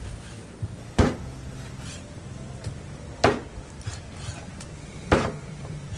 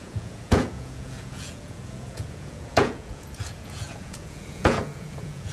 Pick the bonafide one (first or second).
first